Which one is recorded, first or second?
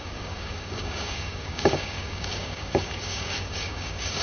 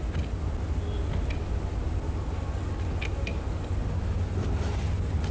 second